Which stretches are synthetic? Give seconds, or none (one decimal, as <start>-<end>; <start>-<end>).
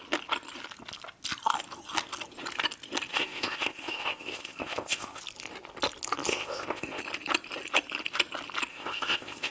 3.1-5.2; 6.3-7.0; 8.7-9.5